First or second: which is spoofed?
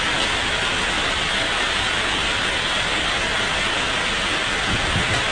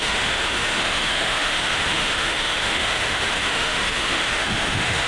second